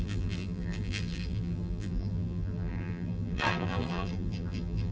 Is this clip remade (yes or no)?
yes